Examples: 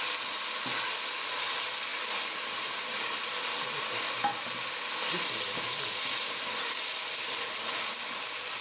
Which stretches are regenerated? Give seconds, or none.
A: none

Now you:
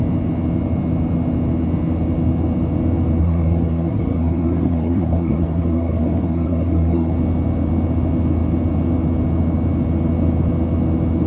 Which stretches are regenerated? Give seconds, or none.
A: 3.2-7.1

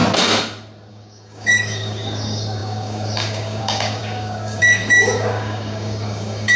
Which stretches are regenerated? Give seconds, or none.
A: 0.9-6.6

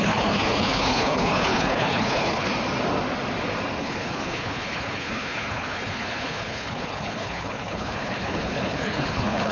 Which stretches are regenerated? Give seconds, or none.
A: 0.0-2.5; 3.8-9.5

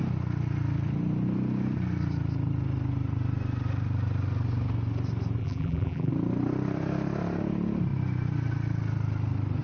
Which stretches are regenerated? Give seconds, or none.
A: 5.4-6.1

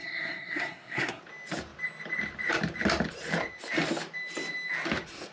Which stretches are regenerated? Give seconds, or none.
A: 0.0-1.2